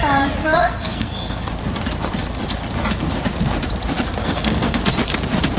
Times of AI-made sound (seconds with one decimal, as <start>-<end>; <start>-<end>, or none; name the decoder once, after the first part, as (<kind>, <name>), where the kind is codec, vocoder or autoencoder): 0.4-1.5 (codec, SNAC); 4.2-4.8